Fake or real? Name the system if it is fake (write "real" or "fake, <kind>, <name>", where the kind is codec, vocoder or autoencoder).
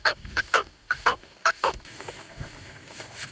fake, codec, DAC